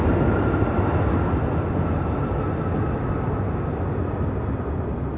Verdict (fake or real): real